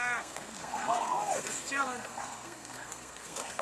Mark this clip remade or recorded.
remade